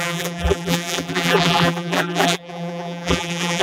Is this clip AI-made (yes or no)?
yes